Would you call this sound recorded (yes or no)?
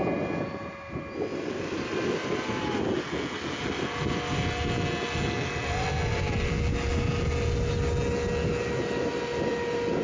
yes